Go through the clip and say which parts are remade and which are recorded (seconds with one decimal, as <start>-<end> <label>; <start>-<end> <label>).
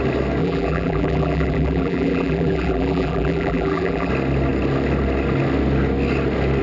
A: 0.0-0.4 recorded; 0.4-4.1 remade; 4.1-6.6 recorded